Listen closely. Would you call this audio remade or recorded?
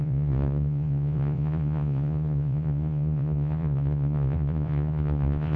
remade